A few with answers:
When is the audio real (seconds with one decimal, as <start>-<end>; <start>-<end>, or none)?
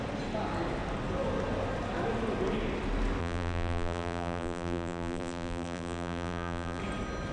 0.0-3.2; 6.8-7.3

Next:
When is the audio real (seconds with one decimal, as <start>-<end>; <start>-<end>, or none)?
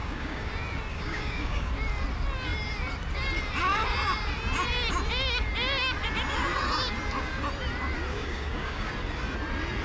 0.5-0.9; 1.7-8.1; 8.9-9.8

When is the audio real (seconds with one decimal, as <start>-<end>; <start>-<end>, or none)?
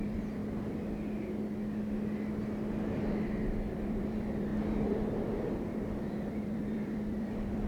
0.4-3.7; 4.5-6.0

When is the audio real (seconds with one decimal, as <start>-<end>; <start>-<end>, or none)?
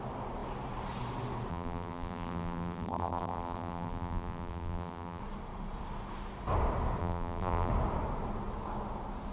0.0-1.5; 5.2-7.0; 7.7-9.3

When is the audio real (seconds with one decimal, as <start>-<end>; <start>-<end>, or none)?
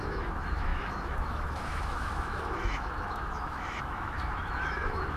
none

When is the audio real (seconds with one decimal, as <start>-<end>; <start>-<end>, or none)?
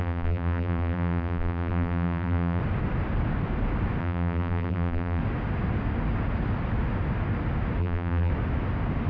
2.6-4.0; 5.2-7.8; 8.3-9.1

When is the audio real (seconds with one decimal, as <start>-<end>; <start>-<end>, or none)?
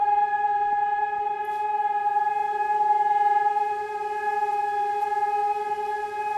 0.0-6.4